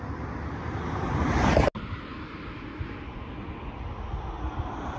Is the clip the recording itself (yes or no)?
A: yes